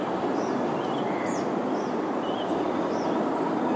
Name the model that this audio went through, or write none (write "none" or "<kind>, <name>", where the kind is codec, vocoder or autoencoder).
none